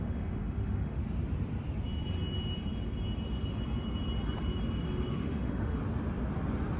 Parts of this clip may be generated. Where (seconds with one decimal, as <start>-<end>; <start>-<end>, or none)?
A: 0.0-1.0; 5.1-5.8